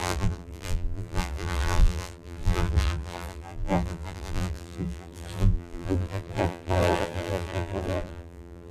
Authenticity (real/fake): fake